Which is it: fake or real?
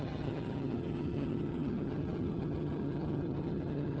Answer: fake